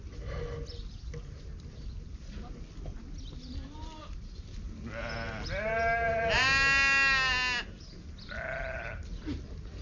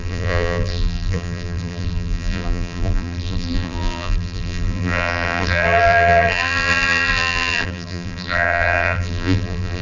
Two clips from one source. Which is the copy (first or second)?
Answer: second